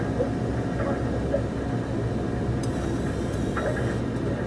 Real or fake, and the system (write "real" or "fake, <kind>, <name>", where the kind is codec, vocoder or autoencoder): real